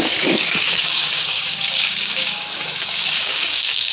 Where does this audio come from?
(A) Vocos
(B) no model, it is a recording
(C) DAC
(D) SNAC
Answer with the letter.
C